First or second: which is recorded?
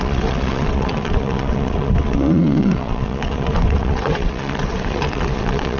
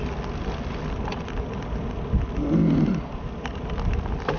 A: second